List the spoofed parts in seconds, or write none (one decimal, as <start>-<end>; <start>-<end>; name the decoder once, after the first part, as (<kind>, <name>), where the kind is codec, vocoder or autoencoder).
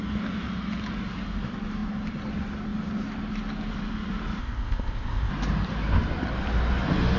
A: 4.4-5.3 (codec, ZipCodec)